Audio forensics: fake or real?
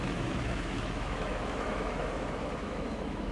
fake